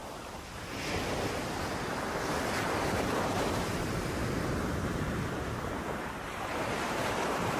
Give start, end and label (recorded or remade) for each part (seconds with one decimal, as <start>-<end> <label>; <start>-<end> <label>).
0.0-3.3 recorded; 3.3-7.6 remade